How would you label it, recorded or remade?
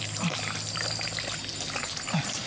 recorded